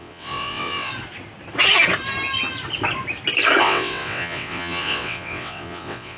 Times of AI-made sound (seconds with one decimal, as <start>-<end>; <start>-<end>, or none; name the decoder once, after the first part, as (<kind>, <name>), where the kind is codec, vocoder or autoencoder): 0.0-0.9 (vocoder, WaveNeXt); 3.6-6.2